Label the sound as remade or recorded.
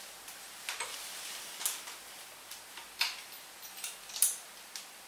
recorded